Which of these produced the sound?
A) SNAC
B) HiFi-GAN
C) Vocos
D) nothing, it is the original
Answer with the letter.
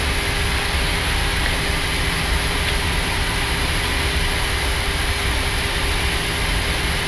D